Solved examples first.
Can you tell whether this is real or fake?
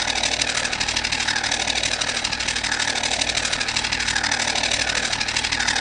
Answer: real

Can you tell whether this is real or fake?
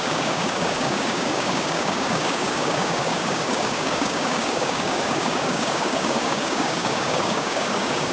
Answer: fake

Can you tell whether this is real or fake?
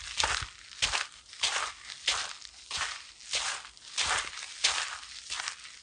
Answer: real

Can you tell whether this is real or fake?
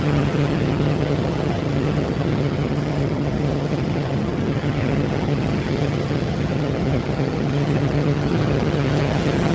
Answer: fake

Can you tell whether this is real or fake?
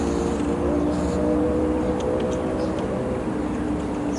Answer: real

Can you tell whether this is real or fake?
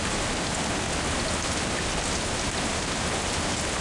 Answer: real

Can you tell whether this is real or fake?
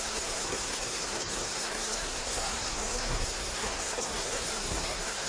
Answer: fake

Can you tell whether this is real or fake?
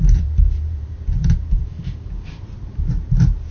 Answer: fake